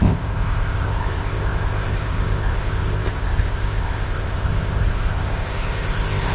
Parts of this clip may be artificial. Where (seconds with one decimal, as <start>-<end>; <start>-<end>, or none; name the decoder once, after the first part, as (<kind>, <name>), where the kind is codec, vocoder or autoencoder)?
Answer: 0.0-6.3 (codec, ZipCodec)